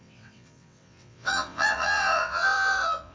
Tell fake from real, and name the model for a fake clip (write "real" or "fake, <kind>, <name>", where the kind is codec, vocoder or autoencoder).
fake, vocoder, WaveNeXt